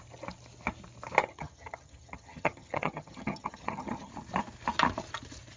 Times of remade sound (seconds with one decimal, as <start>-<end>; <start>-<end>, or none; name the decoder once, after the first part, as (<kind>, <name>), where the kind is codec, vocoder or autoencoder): 1.2-4.1 (vocoder, HiFi-GAN)